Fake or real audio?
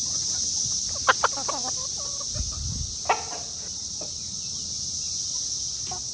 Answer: real